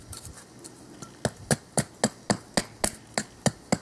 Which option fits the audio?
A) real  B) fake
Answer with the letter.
A